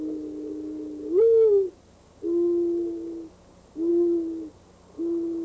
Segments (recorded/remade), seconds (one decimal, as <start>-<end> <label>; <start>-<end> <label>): 0.0-5.4 recorded